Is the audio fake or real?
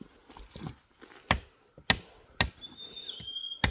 real